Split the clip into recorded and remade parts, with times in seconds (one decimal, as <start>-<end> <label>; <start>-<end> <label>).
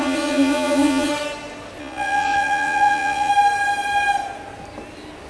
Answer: 0.0-1.1 remade; 1.1-1.8 recorded; 1.8-3.3 remade; 3.3-5.3 recorded